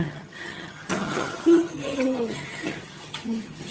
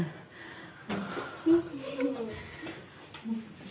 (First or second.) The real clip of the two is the second